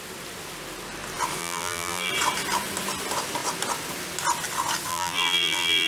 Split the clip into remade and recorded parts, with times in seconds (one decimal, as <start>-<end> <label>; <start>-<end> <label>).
0.0-1.4 recorded; 1.4-2.1 remade; 2.1-4.9 recorded; 4.9-5.9 remade